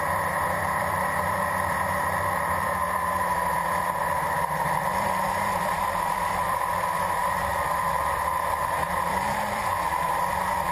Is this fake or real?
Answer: fake